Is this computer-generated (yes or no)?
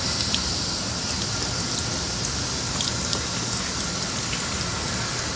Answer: no